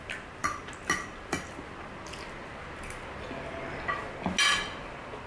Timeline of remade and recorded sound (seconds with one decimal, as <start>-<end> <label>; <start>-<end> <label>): 0.0-5.3 recorded